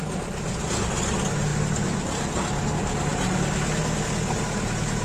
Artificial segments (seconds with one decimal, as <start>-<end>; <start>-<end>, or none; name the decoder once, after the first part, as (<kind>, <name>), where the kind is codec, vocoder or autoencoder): none